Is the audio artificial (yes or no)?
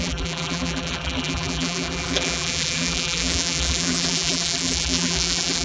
yes